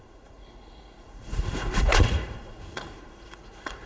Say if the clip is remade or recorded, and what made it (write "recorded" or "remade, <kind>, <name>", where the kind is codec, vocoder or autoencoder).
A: remade, vocoder, Vocos